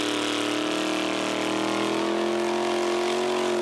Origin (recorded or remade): recorded